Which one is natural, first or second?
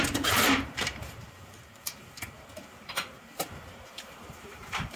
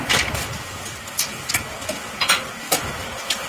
second